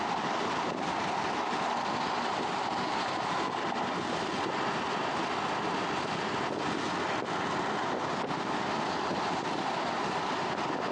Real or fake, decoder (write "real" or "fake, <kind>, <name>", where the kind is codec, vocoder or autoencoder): real